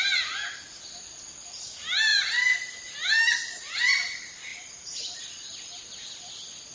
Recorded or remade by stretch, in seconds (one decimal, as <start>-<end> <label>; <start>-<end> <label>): 0.0-6.7 recorded